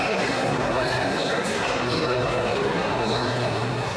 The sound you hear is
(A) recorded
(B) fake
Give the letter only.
B